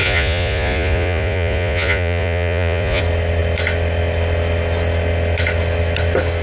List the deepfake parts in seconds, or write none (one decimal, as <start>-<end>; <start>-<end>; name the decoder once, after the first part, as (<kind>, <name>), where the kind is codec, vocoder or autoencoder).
0.0-3.0 (vocoder, Vocos)